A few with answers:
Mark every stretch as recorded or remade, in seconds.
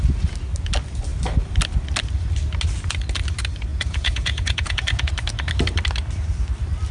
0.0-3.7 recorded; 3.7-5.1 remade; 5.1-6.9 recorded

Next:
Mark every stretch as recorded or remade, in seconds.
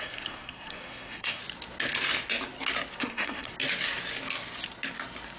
0.0-1.4 remade; 1.4-3.0 recorded; 3.0-3.5 remade; 3.5-5.4 recorded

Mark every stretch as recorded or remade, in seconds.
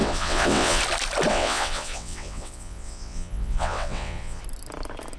0.0-0.8 remade; 0.8-1.3 recorded; 1.3-4.4 remade; 4.4-5.2 recorded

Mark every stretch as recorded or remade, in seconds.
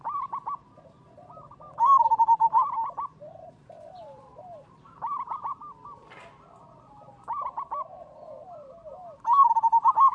0.0-5.6 remade; 5.6-10.1 recorded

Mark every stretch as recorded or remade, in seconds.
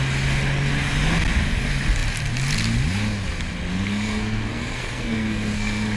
0.0-3.7 recorded; 3.7-6.0 remade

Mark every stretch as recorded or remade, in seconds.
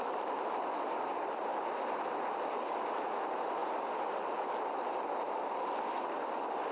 0.0-6.7 recorded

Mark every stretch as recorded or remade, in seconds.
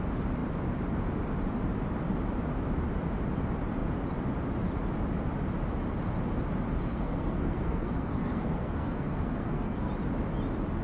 0.0-6.9 recorded; 6.9-9.9 remade; 9.9-10.8 recorded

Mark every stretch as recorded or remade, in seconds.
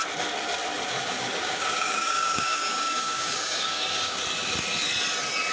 0.0-0.9 recorded; 0.9-4.2 remade; 4.2-5.5 recorded